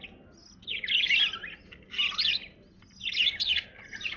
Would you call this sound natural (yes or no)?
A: yes